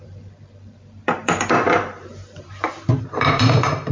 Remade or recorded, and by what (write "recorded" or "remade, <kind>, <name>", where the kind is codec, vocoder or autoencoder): remade, vocoder, BigVGAN v2